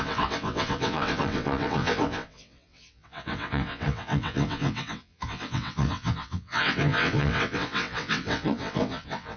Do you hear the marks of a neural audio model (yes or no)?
yes